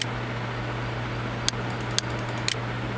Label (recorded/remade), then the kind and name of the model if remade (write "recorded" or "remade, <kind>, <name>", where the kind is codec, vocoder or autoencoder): recorded